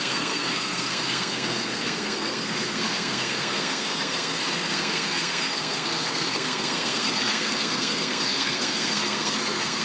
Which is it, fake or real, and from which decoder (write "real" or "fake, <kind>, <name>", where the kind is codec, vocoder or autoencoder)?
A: fake, codec, SNAC